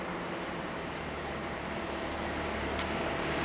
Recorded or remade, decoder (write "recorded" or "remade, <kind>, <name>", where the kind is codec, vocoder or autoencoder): remade, vocoder, BigVGAN v2